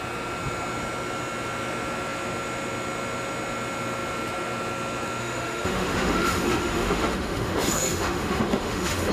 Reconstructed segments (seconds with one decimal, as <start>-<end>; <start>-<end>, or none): 5.2-9.1